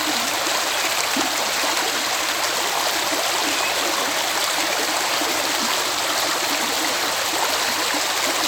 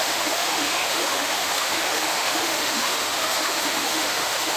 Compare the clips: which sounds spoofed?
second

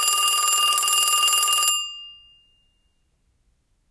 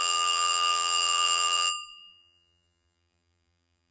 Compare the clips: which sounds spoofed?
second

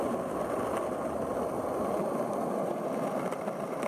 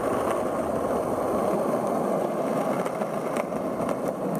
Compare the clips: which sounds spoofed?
first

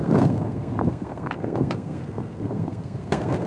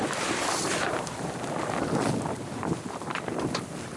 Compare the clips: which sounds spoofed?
first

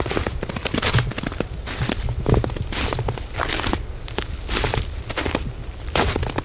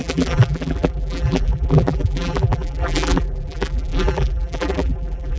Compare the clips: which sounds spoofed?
second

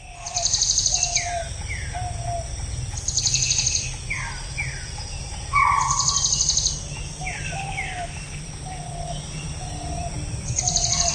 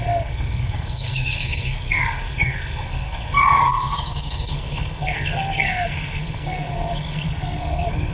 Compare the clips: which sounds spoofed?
second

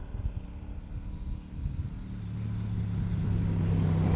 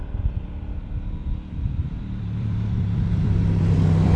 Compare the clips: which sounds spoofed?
second